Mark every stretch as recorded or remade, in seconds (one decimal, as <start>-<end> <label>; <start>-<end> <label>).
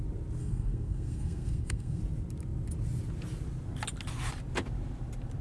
0.0-0.4 recorded; 0.4-2.0 remade; 2.0-5.4 recorded